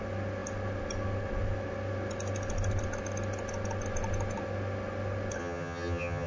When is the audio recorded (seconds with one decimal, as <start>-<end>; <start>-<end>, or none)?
0.0-5.4